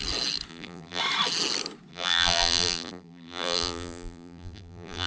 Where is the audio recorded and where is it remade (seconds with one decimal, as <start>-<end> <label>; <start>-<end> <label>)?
0.0-0.5 recorded; 0.5-1.0 remade; 1.0-1.9 recorded; 1.9-5.1 remade